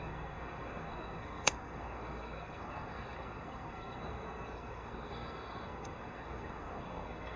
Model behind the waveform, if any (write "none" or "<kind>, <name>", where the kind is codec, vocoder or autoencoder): codec, SNAC